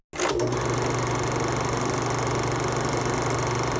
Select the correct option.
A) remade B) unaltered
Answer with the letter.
B